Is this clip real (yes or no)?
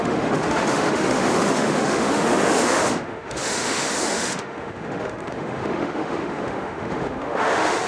no